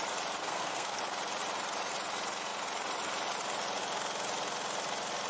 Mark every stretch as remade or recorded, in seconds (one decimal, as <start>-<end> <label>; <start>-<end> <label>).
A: 0.0-0.4 recorded; 0.4-1.0 remade; 1.0-5.3 recorded